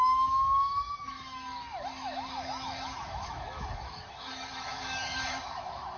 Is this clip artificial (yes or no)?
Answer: yes